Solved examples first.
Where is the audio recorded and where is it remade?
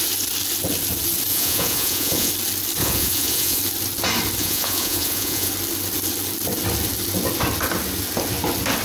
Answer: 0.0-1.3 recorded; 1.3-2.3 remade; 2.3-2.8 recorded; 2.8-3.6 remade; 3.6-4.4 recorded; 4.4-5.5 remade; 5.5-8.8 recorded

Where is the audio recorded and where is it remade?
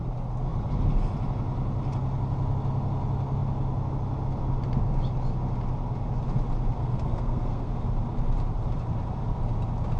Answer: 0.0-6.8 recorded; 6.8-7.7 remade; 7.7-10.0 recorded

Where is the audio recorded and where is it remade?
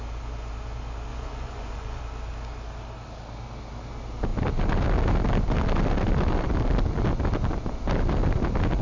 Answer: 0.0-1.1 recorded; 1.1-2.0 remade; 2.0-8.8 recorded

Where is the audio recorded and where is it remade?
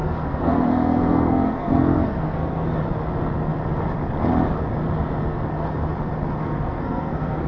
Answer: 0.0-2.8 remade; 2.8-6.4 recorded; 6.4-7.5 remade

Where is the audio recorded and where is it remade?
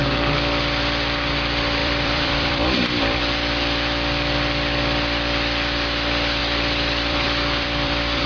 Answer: 0.0-1.8 recorded; 1.8-3.2 remade; 3.2-6.4 recorded; 6.4-8.3 remade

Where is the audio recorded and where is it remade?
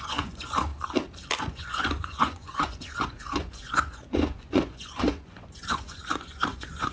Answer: 0.0-0.7 remade; 0.7-1.4 recorded; 1.4-6.9 remade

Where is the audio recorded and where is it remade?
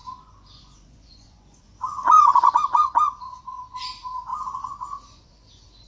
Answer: 0.0-5.9 remade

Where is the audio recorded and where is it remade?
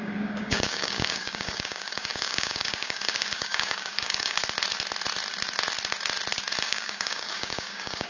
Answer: 0.0-4.4 remade; 4.4-6.6 recorded; 6.6-8.1 remade